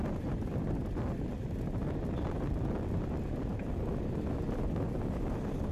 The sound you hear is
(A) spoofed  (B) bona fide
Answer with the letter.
B